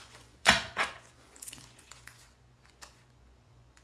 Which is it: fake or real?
fake